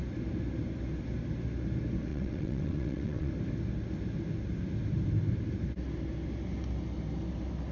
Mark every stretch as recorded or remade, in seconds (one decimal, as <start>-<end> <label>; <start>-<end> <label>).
0.0-2.1 recorded; 2.1-3.3 remade; 3.3-7.7 recorded